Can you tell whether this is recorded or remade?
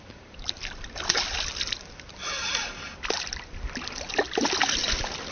recorded